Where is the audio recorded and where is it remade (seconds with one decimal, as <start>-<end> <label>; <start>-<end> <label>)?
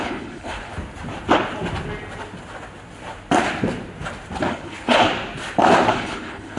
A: 0.0-0.7 remade; 0.7-4.5 recorded; 4.5-5.1 remade; 5.1-5.9 recorded; 5.9-6.6 remade